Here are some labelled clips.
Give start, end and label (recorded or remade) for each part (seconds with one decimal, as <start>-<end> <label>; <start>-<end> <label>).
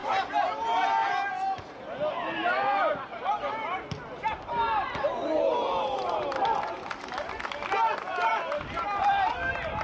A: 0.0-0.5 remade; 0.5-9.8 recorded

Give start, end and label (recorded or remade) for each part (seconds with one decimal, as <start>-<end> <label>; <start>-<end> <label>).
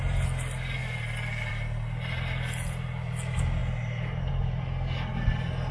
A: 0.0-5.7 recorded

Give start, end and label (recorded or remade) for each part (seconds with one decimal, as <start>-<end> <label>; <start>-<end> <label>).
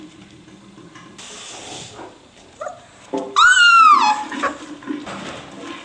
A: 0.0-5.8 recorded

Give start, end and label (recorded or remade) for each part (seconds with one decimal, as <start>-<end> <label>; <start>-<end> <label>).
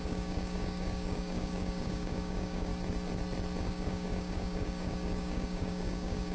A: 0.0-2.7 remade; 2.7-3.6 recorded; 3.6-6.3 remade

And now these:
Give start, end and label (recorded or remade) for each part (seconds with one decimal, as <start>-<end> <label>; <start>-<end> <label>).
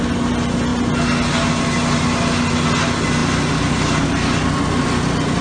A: 0.0-5.4 recorded